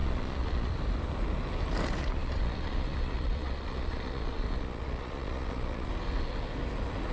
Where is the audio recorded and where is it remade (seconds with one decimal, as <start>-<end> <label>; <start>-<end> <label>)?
0.0-0.7 remade; 0.7-2.0 recorded; 2.0-5.9 remade; 5.9-7.1 recorded